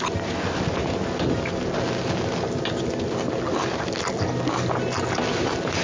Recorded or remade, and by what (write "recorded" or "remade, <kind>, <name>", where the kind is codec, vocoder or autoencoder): recorded